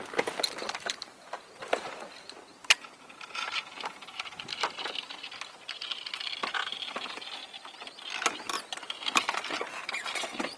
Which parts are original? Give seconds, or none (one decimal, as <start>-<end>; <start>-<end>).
0.0-2.5; 4.7-10.6

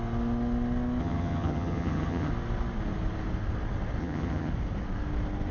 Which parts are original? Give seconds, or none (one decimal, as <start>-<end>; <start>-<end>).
0.0-1.0; 2.3-4.0; 4.5-5.5

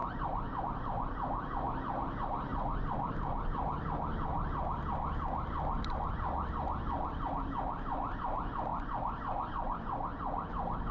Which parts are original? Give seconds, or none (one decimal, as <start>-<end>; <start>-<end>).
0.0-10.9

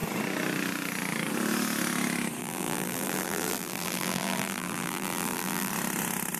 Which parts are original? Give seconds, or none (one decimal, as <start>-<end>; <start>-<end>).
0.0-2.4; 5.7-6.4

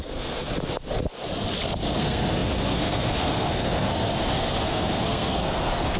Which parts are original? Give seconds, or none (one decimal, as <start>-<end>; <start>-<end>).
0.5-2.0

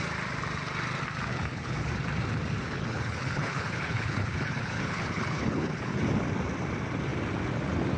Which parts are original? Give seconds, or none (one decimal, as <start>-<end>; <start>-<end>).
0.0-1.3; 1.9-2.6; 6.0-8.0

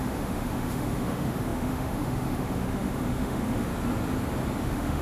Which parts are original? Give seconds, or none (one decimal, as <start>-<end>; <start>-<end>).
3.7-4.6